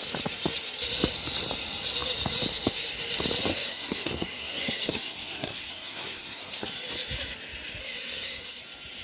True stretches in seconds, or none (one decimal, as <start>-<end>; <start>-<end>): 0.0-3.5; 6.7-7.8; 8.6-9.0